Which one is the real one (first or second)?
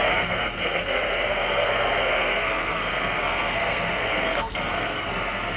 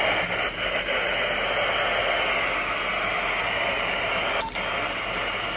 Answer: second